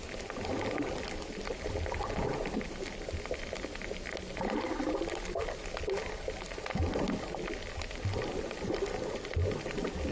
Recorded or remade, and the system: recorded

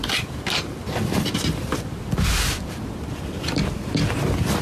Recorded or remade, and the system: remade, vocoder, BigVGAN v2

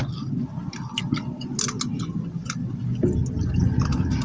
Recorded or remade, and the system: recorded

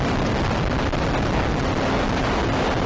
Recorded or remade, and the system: recorded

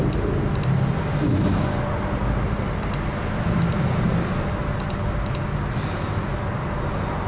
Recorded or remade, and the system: recorded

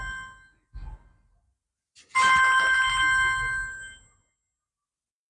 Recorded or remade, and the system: recorded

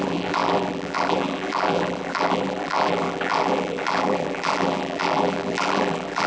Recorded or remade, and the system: remade, vocoder, BigVGAN v2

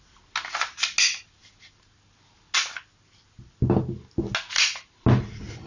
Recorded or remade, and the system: recorded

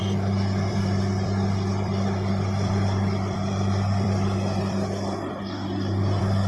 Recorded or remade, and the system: remade, vocoder, BigVGAN v2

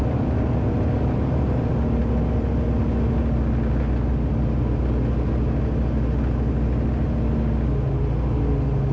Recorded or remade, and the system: recorded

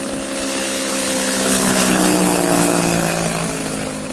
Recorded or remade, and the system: remade, codec, HILCodec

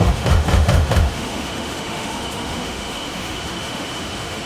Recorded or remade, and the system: remade, autoencoder, DAC-VAE